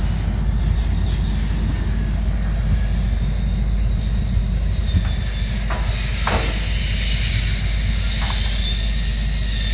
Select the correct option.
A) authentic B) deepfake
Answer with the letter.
A